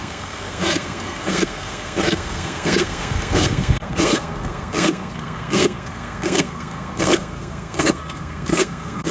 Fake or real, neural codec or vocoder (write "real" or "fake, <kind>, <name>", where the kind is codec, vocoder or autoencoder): fake, codec, SNAC